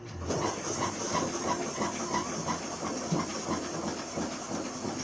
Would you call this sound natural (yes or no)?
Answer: yes